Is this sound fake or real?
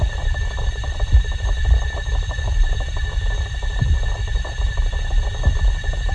fake